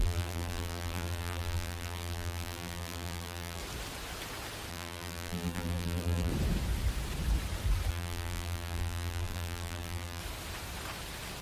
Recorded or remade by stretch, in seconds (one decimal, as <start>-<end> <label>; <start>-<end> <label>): 0.0-3.6 remade; 3.6-4.7 recorded; 4.7-6.3 remade; 6.3-7.9 recorded; 7.9-10.2 remade; 10.2-11.4 recorded